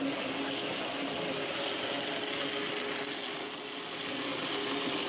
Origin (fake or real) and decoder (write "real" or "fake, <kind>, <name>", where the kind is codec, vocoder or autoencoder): real